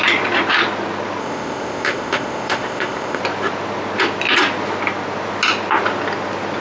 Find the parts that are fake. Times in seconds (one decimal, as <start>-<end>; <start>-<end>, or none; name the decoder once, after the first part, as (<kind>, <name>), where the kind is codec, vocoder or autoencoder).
1.2-3.2 (codec, ZipCodec)